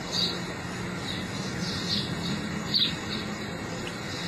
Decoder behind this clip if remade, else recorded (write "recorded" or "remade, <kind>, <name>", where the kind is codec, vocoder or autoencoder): recorded